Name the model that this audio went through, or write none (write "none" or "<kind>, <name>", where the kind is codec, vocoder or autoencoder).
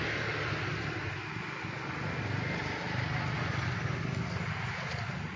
none